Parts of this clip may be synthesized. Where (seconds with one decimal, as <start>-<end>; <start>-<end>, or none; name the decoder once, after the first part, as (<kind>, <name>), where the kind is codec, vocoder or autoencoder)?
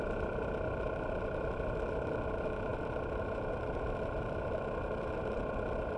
none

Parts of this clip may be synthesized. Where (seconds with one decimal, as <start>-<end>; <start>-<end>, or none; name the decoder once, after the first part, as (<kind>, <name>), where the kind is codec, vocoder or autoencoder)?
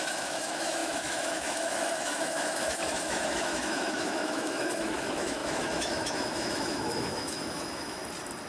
0.0-8.0 (autoencoder, DAC-VAE)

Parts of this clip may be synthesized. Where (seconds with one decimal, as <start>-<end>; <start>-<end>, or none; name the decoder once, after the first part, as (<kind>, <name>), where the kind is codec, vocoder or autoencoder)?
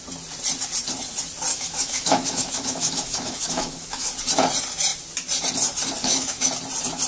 1.5-4.1 (autoencoder, DAC-VAE); 6.0-6.5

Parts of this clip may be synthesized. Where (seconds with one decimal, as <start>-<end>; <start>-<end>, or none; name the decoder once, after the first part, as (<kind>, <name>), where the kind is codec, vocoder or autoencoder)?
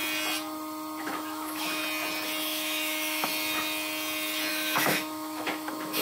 1.0-1.8 (autoencoder, DAC-VAE); 2.4-3.3; 4.5-6.0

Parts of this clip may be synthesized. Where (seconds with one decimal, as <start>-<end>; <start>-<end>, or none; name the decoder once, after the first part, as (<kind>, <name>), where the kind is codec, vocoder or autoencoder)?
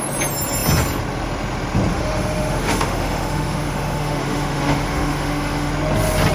1.9-5.7 (autoencoder, DAC-VAE)